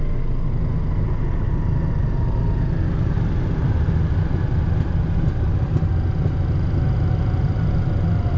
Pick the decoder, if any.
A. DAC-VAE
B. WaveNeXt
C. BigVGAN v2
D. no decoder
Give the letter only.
D